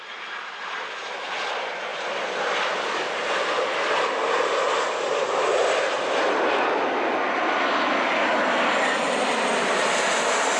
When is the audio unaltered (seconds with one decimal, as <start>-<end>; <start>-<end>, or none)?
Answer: 0.0-1.9; 3.9-10.6